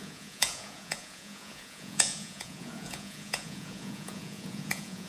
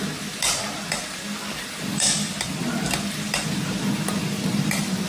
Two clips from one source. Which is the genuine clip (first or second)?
second